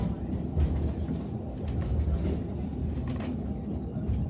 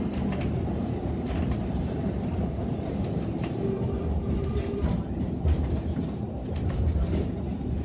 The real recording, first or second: first